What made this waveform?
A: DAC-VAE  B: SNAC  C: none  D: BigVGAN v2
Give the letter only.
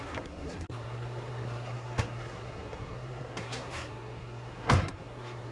B